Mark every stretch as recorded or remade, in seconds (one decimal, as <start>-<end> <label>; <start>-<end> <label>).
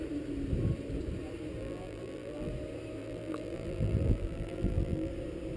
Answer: 0.0-1.6 recorded; 1.6-2.5 remade; 2.5-3.0 recorded; 3.0-5.1 remade; 5.1-5.6 recorded